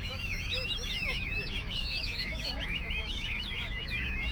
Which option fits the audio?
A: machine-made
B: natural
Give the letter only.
A